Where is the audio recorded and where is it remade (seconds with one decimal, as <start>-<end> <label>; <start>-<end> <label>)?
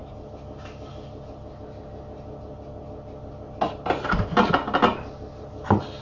0.0-6.0 recorded